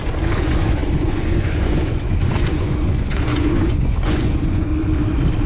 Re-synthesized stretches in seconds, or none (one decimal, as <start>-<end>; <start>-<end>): 0.0-4.7